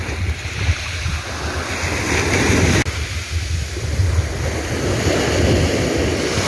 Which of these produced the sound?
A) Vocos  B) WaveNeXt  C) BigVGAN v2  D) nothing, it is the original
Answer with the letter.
D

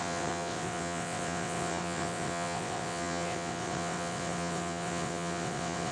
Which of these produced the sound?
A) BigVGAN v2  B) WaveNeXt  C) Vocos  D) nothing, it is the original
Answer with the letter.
B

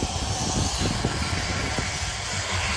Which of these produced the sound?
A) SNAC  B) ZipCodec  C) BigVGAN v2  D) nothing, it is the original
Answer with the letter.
D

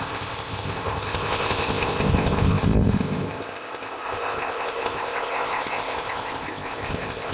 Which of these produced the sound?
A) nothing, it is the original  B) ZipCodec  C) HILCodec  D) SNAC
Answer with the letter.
B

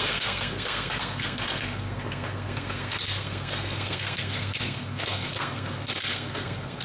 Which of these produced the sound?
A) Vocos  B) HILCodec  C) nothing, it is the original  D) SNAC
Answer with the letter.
D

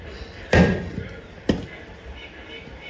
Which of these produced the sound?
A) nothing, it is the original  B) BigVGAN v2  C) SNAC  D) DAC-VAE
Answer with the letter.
B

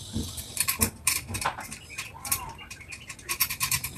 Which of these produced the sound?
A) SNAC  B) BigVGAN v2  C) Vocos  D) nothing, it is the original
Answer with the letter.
B